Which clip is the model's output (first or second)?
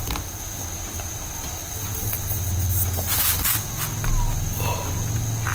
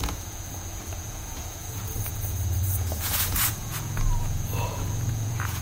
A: second